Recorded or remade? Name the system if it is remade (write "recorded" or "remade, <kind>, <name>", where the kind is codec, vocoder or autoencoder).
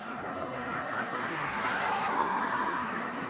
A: remade, codec, SNAC